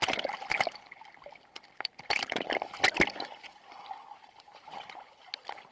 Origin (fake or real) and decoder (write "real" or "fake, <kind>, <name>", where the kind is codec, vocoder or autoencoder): real